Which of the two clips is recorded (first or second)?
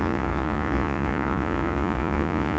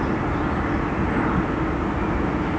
second